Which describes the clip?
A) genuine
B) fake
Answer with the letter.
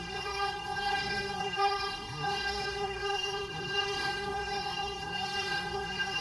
B